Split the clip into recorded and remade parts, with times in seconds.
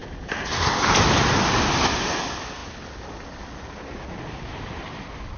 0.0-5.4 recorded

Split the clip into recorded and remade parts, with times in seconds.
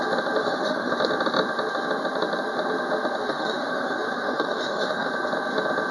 0.0-0.4 recorded; 0.4-0.9 remade; 0.9-3.2 recorded; 3.2-5.1 remade; 5.1-5.9 recorded